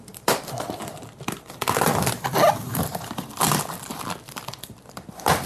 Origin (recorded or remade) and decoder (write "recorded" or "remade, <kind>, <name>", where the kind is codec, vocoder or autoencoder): remade, vocoder, BigVGAN v2